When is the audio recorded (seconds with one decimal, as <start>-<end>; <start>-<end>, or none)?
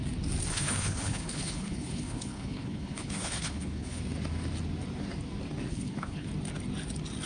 0.0-0.5; 4.0-5.7; 6.3-7.3